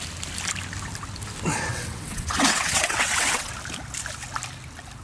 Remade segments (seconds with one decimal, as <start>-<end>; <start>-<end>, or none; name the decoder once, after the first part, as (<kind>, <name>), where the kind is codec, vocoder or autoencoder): 1.7-3.5 (vocoder, WaveNeXt)